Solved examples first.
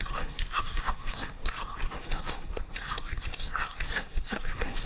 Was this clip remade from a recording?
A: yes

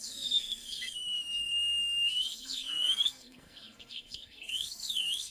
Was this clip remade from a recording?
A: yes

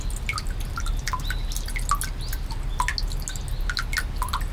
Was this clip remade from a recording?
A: no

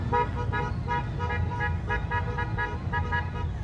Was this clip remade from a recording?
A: no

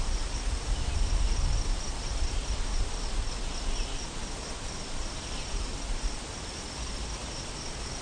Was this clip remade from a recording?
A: no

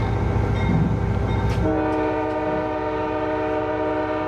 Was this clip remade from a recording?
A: no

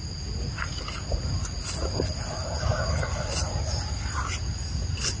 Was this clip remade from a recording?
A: no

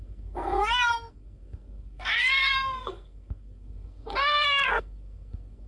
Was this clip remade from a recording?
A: yes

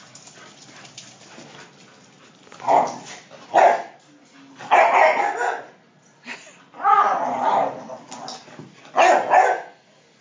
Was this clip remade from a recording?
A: no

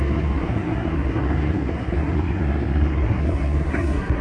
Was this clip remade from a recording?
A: yes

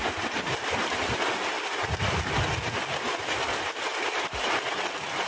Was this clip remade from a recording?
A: no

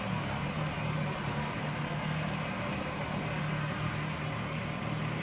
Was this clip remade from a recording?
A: no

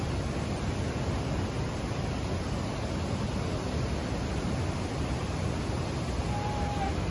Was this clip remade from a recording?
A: no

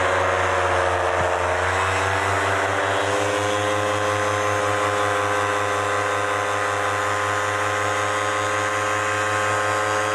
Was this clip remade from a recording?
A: no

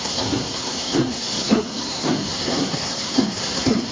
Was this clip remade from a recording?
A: yes